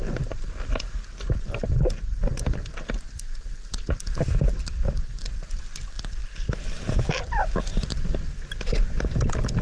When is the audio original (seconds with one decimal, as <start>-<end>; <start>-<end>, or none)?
0.0-9.6